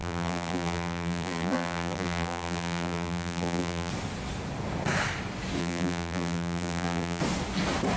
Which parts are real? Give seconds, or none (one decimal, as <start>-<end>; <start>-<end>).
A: 3.9-5.6; 7.2-8.0

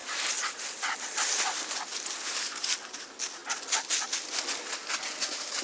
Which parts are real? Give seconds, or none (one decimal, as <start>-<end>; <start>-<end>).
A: 1.6-5.6

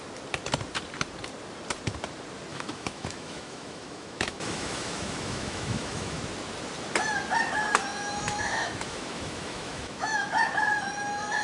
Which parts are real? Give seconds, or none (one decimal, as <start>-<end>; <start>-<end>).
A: 0.0-2.5; 6.2-7.9; 10.3-11.4